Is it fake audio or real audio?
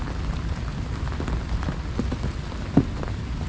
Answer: real